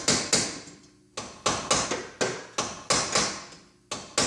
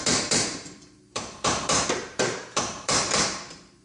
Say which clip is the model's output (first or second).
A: second